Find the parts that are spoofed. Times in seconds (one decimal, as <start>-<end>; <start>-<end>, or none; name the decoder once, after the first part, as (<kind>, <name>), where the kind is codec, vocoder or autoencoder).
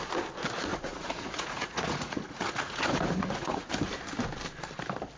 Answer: 0.7-3.7 (vocoder, Vocos)